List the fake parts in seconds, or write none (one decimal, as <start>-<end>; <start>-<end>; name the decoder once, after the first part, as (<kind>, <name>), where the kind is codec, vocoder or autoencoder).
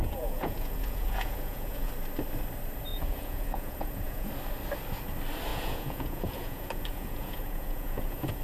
0.0-1.9 (vocoder, Vocos); 2.9-4.3; 5.5-8.4